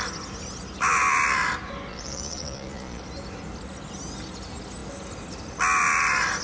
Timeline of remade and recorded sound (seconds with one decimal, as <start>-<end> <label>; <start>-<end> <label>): 0.0-1.9 recorded; 1.9-3.0 remade; 3.0-6.4 recorded